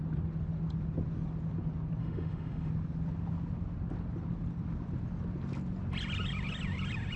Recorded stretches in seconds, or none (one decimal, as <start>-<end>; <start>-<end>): 0.0-2.0; 2.7-7.2